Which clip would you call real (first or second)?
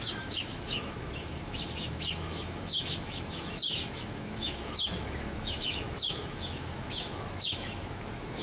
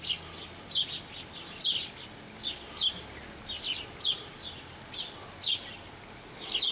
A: second